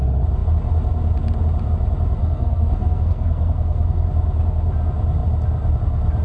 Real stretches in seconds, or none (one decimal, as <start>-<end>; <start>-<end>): 0.0-2.2; 4.1-6.2